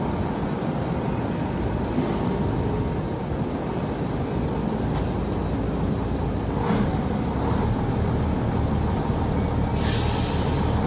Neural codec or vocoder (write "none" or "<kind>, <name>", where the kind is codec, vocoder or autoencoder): none